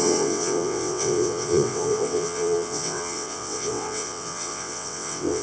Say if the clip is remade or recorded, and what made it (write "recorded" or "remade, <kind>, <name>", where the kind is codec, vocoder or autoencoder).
remade, vocoder, WaveNeXt